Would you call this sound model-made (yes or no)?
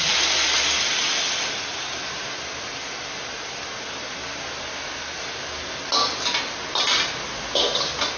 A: no